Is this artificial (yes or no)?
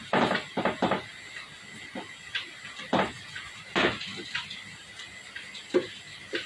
no